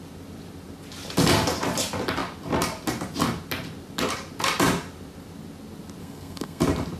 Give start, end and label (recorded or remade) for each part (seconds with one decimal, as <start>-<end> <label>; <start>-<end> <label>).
0.0-6.0 recorded; 6.0-6.6 remade; 6.6-7.0 recorded